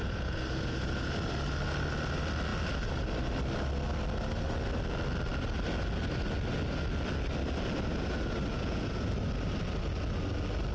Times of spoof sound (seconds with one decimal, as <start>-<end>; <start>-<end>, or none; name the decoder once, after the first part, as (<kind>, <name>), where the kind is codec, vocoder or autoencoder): 0.0-1.1 (vocoder, Vocos); 8.5-9.1